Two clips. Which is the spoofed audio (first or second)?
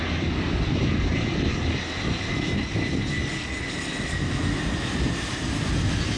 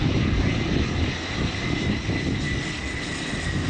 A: second